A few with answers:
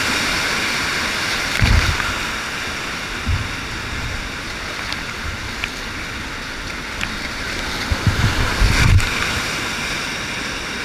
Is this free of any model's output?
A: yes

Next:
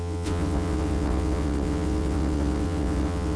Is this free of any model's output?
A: no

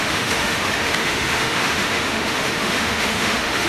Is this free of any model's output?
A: no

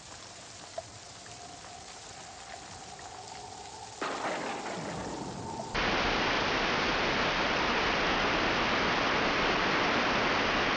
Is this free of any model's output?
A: yes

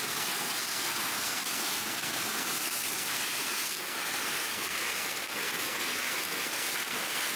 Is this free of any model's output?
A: no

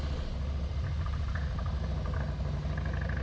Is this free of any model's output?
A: yes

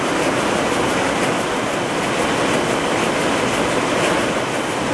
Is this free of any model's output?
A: yes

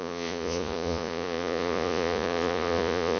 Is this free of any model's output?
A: no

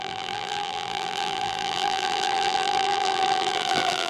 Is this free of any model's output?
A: no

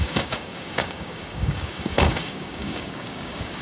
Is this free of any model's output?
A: no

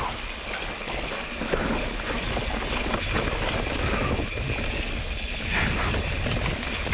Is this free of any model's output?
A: yes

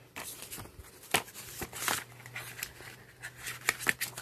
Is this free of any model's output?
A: yes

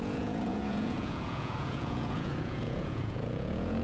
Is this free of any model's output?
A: no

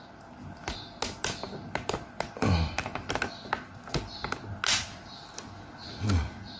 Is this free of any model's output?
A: yes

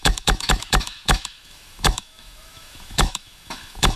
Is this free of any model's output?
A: no